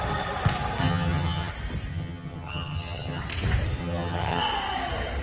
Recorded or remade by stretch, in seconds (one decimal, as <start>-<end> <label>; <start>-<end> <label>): 0.0-0.8 recorded; 0.8-1.5 remade; 1.5-1.9 recorded; 1.9-3.2 remade; 3.2-3.8 recorded; 3.8-4.4 remade; 4.4-5.2 recorded